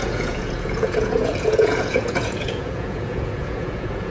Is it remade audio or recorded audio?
remade